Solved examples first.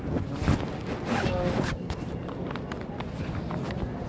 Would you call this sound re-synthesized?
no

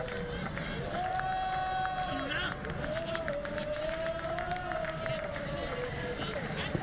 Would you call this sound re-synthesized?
no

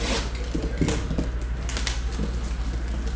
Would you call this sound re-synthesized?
no